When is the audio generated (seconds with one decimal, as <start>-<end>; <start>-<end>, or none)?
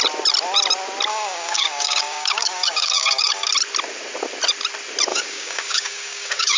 1.1-3.5; 5.1-6.6